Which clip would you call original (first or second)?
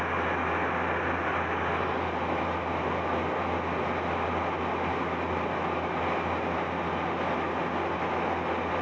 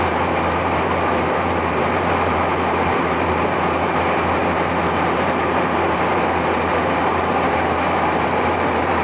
first